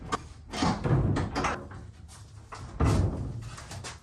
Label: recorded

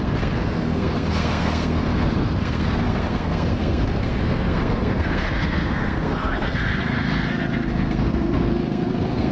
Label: remade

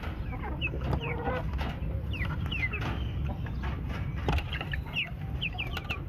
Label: remade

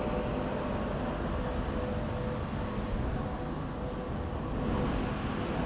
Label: recorded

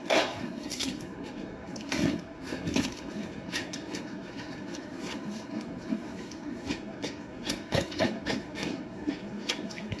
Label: remade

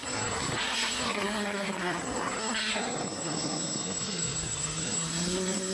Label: remade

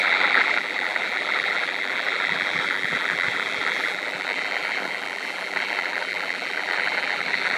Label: remade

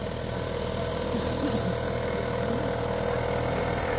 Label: recorded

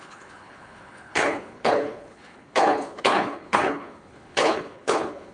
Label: remade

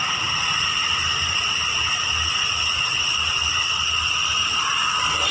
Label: recorded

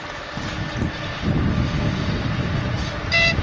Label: recorded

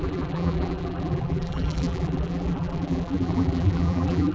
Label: remade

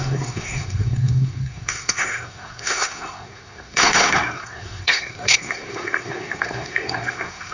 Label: remade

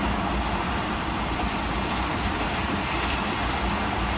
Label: remade